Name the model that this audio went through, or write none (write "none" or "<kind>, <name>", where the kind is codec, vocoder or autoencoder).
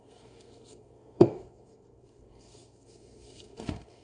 codec, SNAC